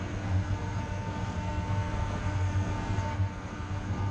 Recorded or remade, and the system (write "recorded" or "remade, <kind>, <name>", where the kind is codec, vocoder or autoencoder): remade, codec, SNAC